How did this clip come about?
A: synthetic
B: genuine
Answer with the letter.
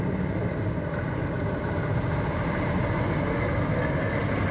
B